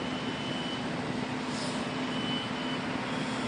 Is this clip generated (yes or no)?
no